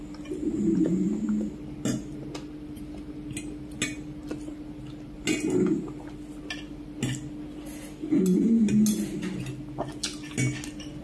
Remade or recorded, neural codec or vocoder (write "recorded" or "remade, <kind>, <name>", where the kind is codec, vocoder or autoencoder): recorded